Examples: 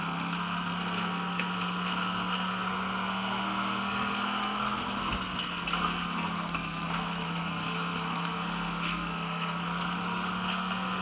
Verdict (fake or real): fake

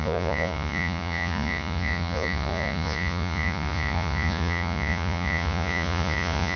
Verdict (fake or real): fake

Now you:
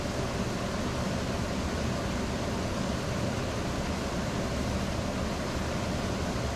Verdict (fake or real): real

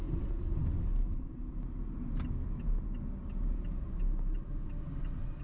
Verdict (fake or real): real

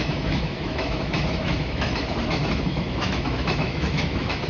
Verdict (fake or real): fake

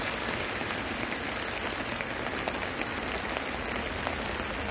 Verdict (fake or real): real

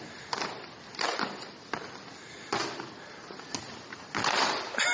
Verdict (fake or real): real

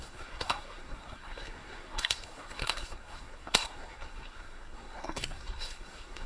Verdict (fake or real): fake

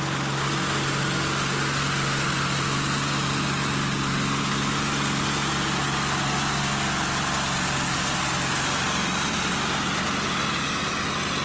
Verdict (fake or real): real